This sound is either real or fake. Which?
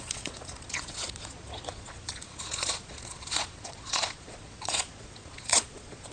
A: fake